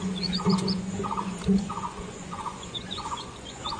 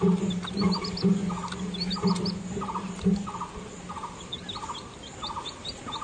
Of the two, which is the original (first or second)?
second